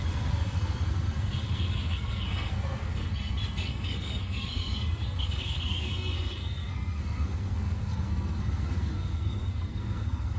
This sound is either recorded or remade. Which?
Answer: remade